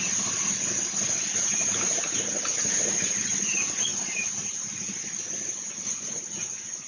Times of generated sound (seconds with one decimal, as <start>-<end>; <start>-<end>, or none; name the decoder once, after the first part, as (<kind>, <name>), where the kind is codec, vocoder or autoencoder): 3.9-4.8 (vocoder, BigVGAN v2)

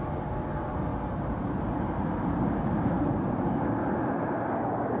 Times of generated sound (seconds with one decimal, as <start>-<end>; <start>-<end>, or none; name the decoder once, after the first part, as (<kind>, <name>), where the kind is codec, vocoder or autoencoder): 0.9-3.7 (vocoder, BigVGAN v2)

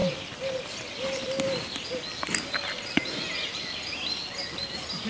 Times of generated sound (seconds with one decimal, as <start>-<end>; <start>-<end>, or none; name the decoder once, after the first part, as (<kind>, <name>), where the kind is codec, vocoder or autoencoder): none